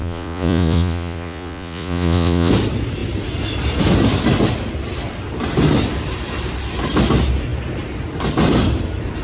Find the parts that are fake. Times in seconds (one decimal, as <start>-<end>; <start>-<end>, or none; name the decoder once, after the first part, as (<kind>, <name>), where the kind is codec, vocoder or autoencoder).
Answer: 0.0-2.5 (vocoder, Vocos)